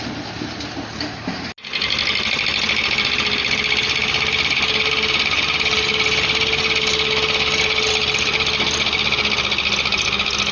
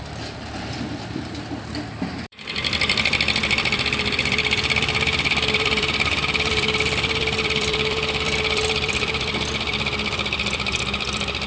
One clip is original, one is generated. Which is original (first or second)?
first